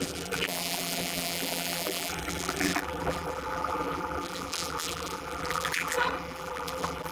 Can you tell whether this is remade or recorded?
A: remade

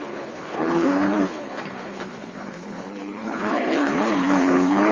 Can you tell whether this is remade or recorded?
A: remade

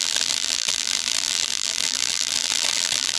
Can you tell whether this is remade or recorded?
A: remade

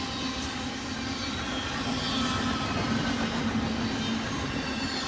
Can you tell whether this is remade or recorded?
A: recorded